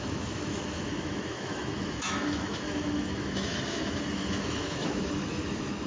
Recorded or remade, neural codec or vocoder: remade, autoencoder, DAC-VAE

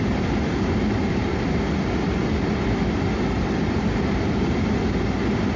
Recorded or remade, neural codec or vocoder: recorded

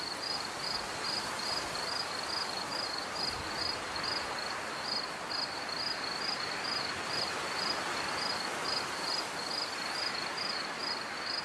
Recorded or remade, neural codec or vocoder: recorded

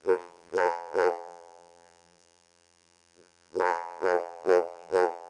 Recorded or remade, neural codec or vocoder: remade, vocoder, BigVGAN v2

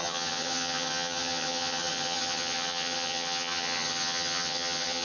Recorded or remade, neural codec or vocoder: remade, vocoder, HiFi-GAN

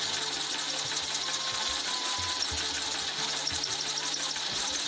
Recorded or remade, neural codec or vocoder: recorded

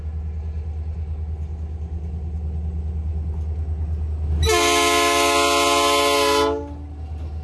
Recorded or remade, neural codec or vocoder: recorded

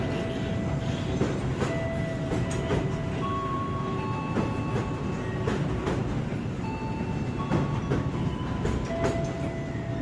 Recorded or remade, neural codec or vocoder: recorded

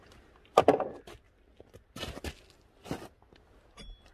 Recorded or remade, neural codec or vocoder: recorded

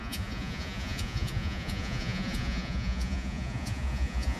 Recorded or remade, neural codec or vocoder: remade, vocoder, Vocos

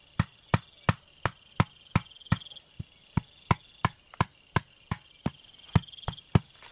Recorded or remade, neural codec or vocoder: recorded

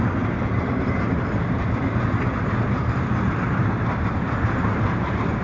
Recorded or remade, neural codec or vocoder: recorded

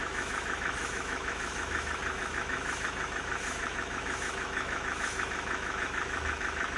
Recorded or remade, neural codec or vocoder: remade, autoencoder, DAC-VAE